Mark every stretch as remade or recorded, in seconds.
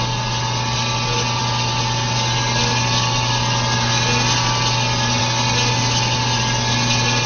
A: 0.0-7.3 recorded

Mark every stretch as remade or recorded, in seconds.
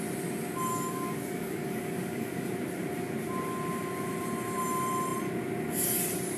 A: 0.0-0.7 recorded; 0.7-2.5 remade; 2.5-6.4 recorded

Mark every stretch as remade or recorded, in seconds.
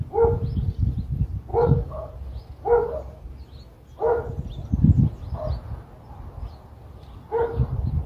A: 0.0-1.5 recorded; 1.5-2.1 remade; 2.1-8.1 recorded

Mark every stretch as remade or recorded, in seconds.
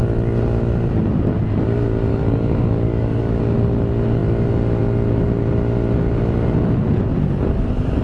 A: 0.0-2.1 recorded; 2.1-3.4 remade; 3.4-8.0 recorded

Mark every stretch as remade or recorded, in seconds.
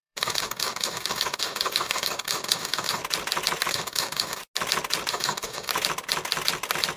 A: 0.0-3.0 remade; 3.0-3.7 recorded; 3.7-4.4 remade; 4.4-5.1 recorded; 5.1-5.7 remade; 5.7-7.0 recorded